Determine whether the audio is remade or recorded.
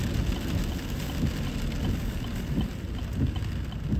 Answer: recorded